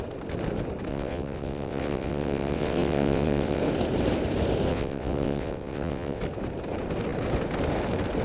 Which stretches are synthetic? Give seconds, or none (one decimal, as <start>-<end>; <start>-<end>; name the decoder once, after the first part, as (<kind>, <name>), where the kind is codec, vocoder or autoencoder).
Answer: 0.9-3.6 (vocoder, WaveNeXt); 4.7-6.2